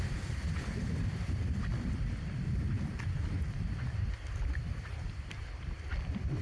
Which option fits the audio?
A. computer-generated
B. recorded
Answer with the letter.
B